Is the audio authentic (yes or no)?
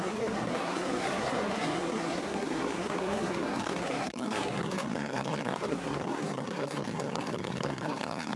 no